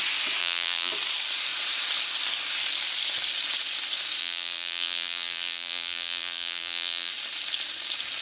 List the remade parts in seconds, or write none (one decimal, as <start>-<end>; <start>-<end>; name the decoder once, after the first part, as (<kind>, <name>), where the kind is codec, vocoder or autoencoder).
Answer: 0.4-0.9 (vocoder, BigVGAN v2); 4.2-7.1